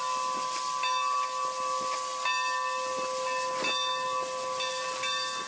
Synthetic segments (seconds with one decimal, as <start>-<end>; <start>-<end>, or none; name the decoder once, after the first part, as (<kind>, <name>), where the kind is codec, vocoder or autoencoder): none